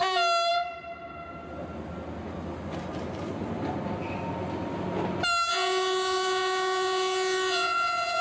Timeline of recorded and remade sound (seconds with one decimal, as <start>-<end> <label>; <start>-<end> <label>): 0.0-5.5 recorded; 5.5-8.2 remade